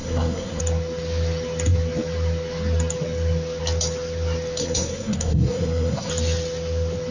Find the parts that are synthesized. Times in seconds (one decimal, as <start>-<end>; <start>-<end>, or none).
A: 0.0-0.6; 4.6-6.1